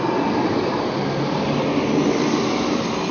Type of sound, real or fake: real